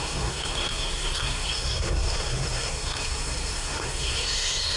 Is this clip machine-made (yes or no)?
yes